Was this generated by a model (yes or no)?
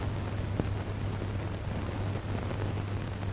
no